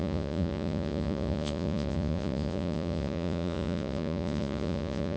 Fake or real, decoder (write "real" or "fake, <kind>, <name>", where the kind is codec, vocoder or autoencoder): fake, vocoder, Vocos